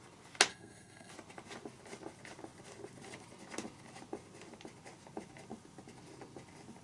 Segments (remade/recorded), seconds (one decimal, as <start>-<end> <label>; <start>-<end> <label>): 0.0-0.5 recorded; 0.5-1.1 remade; 1.1-6.8 recorded